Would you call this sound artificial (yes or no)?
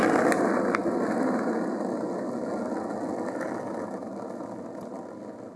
no